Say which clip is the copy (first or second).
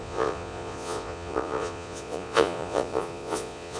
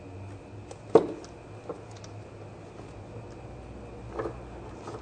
first